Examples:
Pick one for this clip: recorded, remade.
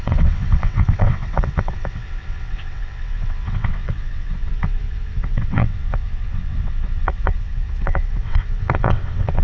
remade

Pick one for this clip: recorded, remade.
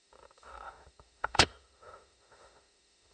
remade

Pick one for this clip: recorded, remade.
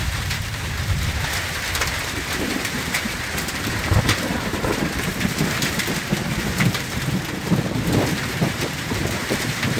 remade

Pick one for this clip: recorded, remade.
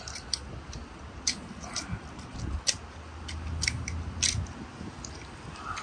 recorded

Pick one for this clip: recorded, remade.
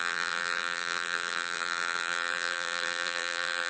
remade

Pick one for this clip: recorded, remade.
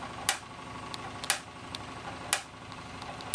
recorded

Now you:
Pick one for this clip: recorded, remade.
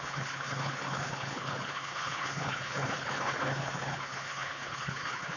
remade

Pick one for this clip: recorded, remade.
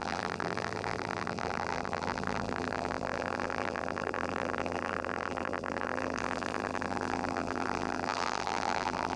remade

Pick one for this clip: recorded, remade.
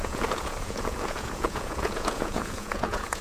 remade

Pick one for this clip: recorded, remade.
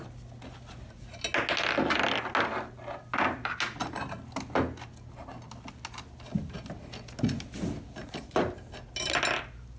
recorded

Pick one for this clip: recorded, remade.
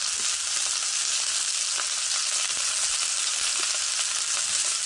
recorded